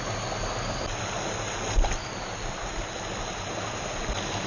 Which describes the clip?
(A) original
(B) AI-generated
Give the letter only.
A